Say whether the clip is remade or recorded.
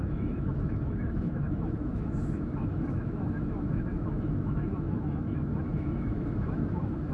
remade